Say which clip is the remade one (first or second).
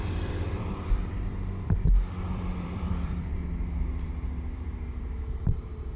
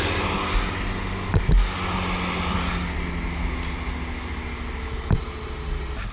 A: first